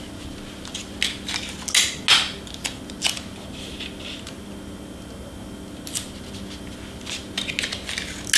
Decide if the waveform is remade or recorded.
recorded